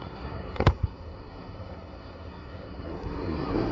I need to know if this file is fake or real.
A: fake